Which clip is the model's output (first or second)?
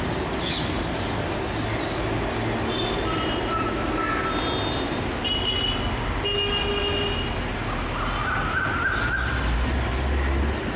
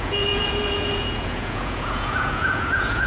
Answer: second